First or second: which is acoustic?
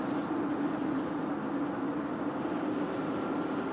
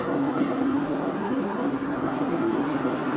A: first